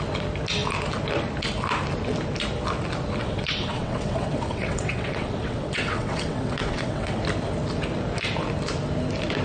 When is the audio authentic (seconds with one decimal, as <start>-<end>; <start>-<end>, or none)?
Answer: 0.0-3.2; 7.2-9.4